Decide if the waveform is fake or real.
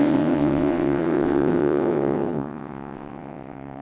fake